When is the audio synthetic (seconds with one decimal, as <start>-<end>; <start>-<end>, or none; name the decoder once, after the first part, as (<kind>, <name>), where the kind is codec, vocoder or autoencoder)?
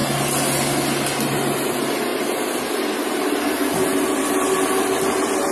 none